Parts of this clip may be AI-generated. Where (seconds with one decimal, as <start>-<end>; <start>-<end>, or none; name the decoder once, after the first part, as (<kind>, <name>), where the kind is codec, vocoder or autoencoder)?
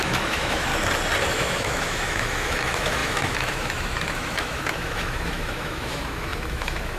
0.0-0.7 (autoencoder, DAC-VAE); 1.3-7.0